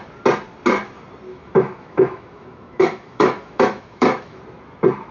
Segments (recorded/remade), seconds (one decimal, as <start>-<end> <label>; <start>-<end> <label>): 0.0-1.3 recorded; 1.3-4.4 remade; 4.4-5.1 recorded